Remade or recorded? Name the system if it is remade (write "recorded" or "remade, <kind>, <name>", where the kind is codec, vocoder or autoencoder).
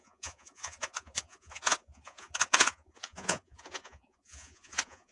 remade, vocoder, Vocos